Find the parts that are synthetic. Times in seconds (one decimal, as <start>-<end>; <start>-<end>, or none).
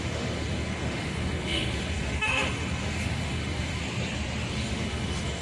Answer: 0.0-3.8; 4.5-5.4